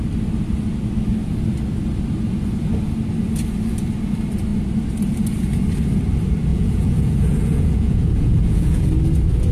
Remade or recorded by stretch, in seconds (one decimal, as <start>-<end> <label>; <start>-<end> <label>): 0.0-6.5 recorded; 6.5-8.9 remade; 8.9-9.5 recorded